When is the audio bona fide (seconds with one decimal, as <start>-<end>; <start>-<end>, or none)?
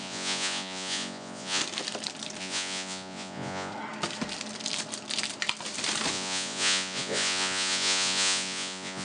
1.6-2.4; 3.7-6.1